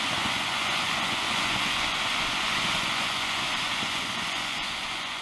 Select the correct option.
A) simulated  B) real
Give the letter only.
A